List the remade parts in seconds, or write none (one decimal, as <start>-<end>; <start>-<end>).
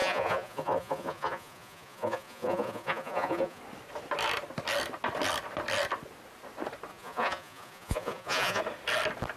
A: 0.0-3.6; 6.9-8.6